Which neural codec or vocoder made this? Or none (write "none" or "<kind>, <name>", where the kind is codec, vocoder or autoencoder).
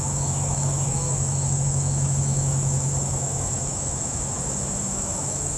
autoencoder, DAC-VAE